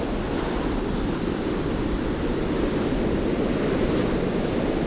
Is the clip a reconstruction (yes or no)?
no